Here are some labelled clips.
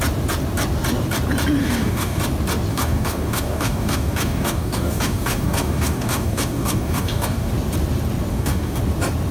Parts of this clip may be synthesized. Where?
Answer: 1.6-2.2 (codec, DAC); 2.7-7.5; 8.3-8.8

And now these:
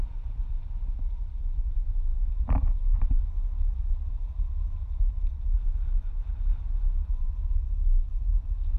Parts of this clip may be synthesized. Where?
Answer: none

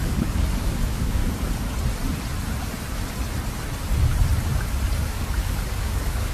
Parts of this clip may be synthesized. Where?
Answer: 0.0-1.2 (codec, DAC); 5.0-6.3

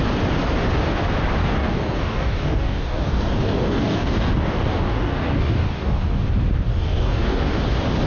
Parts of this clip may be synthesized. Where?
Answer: 1.4-6.3 (codec, DAC); 6.7-7.6